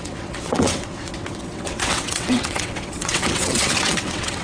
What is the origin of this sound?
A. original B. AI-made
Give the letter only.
B